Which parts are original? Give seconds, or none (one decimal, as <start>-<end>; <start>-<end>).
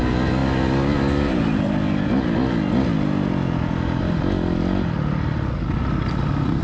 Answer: 0.0-6.6